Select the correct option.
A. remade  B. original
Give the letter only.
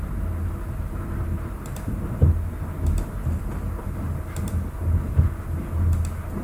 B